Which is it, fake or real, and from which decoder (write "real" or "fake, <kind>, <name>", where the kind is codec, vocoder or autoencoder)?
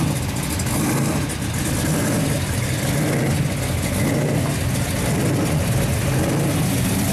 real